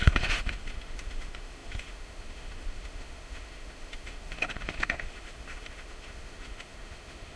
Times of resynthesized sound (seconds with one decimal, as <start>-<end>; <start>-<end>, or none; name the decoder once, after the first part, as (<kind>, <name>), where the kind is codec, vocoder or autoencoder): 0.0-7.4 (autoencoder, DAC-VAE)